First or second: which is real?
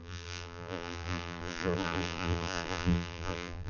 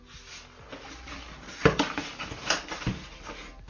second